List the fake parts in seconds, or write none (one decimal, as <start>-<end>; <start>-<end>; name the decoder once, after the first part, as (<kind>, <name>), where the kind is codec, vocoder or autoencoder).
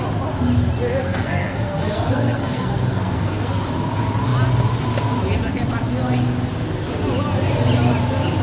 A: 1.0-3.6 (codec, SNAC)